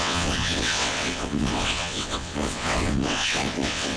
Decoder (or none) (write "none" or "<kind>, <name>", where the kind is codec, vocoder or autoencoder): vocoder, WaveNeXt